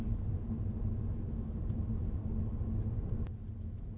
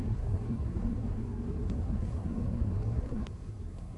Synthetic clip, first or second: second